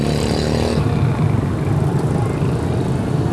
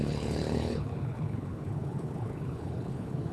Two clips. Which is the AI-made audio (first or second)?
second